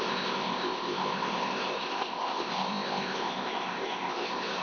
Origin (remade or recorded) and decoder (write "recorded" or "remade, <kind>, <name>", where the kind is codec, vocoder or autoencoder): remade, codec, ZipCodec